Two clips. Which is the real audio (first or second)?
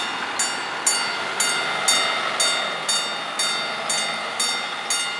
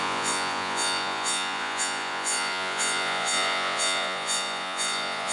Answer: first